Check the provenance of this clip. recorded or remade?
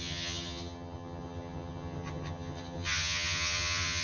remade